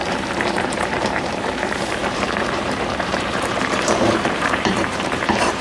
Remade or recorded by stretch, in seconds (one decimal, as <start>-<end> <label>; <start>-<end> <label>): 0.0-5.6 remade

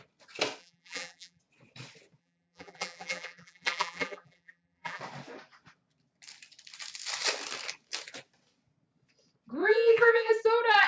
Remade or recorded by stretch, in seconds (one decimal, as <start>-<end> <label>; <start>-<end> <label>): 0.0-0.6 recorded; 0.6-1.4 remade; 1.4-2.2 recorded; 2.2-5.0 remade; 5.0-9.6 recorded; 9.6-10.3 remade; 10.3-10.9 recorded

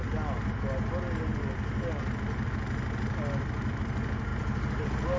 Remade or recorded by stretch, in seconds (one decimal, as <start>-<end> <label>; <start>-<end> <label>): 0.0-5.2 recorded

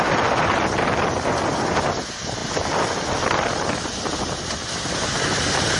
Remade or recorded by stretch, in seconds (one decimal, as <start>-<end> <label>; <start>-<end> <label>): 0.0-5.8 recorded

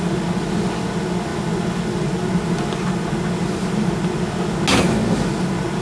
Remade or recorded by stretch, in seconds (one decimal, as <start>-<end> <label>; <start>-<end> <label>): 0.0-5.8 recorded

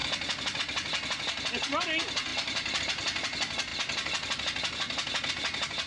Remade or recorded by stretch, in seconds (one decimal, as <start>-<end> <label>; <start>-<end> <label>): 0.0-2.3 recorded; 2.3-2.8 remade; 2.8-5.9 recorded

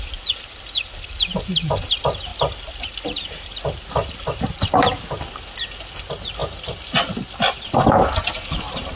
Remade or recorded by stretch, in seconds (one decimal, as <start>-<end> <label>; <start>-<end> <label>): 0.0-9.0 remade

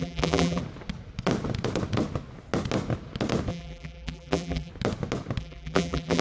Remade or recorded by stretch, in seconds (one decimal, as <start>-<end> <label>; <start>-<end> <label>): 0.0-0.6 remade; 0.6-3.5 recorded; 3.5-4.7 remade; 4.7-5.4 recorded; 5.4-6.2 remade